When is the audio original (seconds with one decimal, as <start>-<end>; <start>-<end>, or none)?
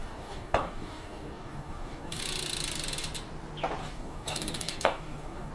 2.2-3.8